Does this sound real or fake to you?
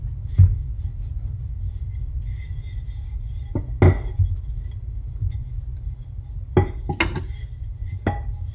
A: real